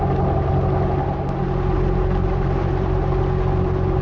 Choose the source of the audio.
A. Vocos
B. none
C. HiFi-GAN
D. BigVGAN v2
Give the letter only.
B